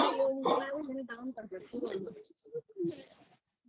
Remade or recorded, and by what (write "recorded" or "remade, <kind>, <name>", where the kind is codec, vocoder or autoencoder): recorded